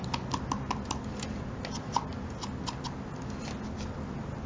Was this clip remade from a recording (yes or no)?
no